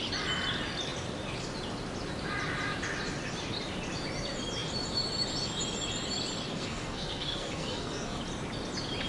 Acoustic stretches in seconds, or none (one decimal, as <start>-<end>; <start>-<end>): 0.0-6.5; 8.2-9.1